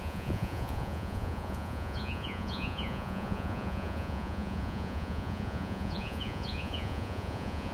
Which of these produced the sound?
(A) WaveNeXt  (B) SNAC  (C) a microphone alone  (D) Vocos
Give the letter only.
D